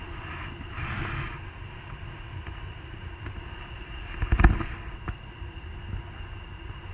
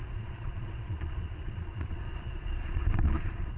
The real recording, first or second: first